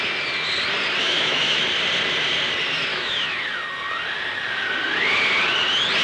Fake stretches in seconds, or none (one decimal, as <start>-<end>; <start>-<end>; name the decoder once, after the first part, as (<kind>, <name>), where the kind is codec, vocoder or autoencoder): 1.0-1.6 (autoencoder, DAC-VAE); 2.9-3.4